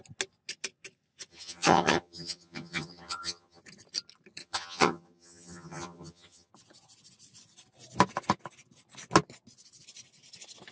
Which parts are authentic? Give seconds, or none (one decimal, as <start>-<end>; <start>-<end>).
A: 0.0-1.3; 3.6-4.4; 6.5-10.7